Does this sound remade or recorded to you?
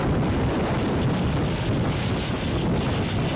recorded